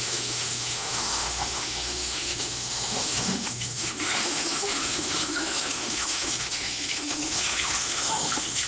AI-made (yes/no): yes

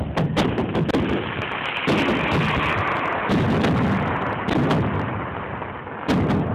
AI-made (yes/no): no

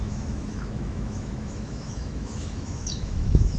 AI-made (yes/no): yes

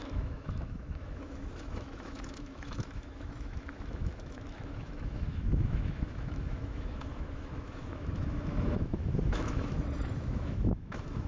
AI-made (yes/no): yes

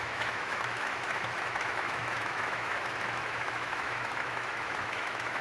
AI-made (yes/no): yes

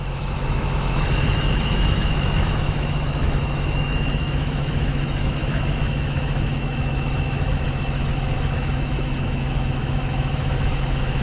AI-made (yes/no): yes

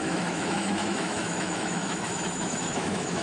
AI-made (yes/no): yes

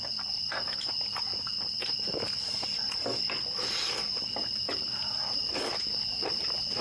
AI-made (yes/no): no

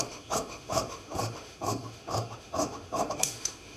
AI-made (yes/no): yes